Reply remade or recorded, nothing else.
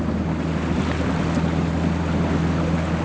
recorded